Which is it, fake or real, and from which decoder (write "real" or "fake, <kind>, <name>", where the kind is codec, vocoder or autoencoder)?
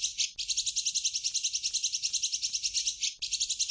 real